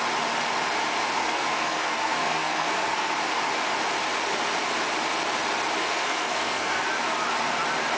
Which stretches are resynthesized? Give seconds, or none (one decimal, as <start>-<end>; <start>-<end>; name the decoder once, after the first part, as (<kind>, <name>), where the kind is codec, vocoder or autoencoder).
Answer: 1.2-3.1 (codec, SNAC); 5.8-6.8